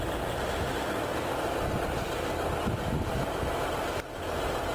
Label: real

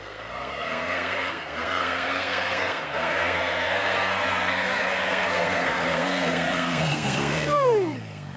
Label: fake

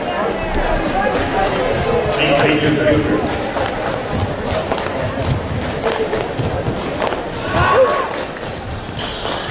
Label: real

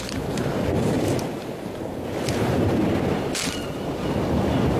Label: real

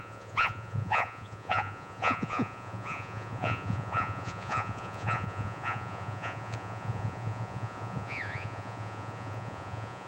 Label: fake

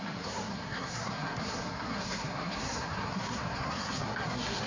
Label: fake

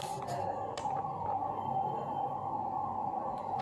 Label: real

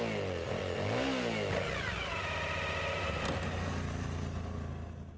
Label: real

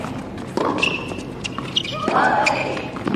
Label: real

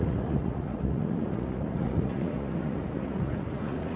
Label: fake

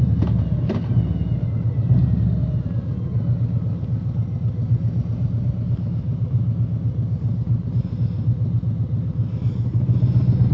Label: real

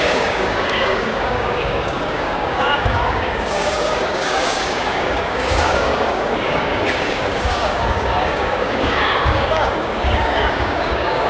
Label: fake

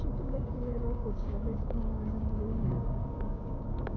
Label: fake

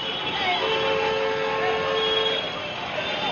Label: real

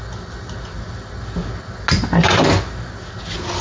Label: real